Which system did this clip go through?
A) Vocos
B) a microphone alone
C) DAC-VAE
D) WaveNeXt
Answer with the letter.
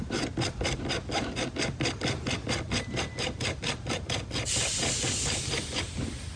B